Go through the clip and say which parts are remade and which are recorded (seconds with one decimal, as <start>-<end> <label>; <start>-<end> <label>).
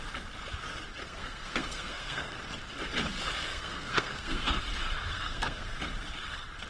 0.0-1.0 recorded; 1.0-2.4 remade; 2.4-3.5 recorded; 3.5-4.6 remade; 4.6-5.1 recorded; 5.1-5.8 remade; 5.8-6.7 recorded